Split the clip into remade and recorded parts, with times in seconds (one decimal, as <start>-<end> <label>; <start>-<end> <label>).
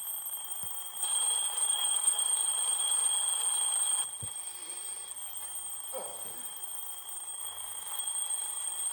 0.0-1.4 recorded; 1.4-2.2 remade; 2.2-7.4 recorded; 7.4-8.0 remade; 8.0-8.9 recorded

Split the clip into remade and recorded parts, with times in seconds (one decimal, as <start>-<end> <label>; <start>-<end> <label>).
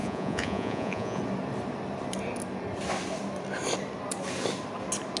0.0-1.2 remade; 1.2-5.2 recorded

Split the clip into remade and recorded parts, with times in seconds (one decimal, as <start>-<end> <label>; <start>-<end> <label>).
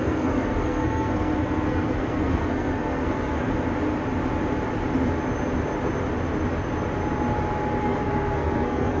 0.0-3.5 remade; 3.5-7.8 recorded; 7.8-9.0 remade